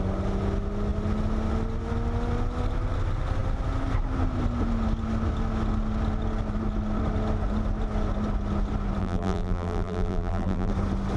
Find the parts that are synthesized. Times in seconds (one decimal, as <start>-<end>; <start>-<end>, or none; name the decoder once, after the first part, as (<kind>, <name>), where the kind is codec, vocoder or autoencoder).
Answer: 9.0-10.7 (vocoder, BigVGAN v2)

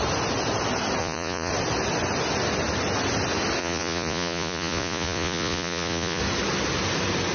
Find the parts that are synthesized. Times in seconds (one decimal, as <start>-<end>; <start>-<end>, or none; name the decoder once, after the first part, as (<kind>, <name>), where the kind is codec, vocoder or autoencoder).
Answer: 1.0-1.5 (vocoder, Vocos); 3.6-6.2

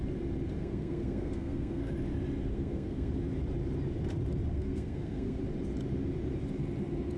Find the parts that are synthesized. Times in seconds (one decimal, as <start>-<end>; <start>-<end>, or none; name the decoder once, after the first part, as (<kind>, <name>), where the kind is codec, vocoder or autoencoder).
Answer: 0.6-1.9 (codec, SNAC); 2.4-3.1; 4.5-5.4

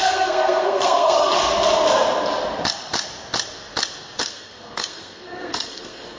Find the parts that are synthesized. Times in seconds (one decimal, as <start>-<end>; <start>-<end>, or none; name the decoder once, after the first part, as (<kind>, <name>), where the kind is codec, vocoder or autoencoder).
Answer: 0.0-1.3 (codec, SNAC); 4.2-6.2

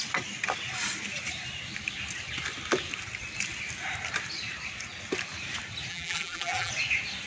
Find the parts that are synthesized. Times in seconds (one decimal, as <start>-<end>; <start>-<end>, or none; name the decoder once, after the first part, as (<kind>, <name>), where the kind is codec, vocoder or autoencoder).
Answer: 5.9-6.7 (vocoder, BigVGAN v2)

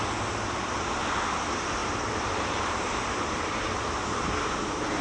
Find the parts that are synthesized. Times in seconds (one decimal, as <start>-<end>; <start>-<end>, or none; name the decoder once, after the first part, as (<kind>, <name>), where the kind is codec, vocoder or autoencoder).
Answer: 1.8-5.0 (vocoder, BigVGAN v2)

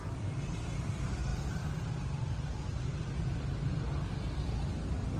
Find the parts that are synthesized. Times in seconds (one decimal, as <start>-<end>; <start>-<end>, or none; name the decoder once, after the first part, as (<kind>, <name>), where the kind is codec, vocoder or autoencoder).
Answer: none